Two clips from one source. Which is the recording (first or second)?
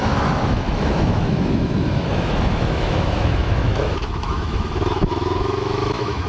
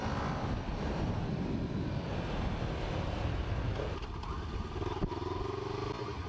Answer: second